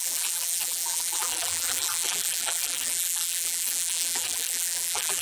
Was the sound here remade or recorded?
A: remade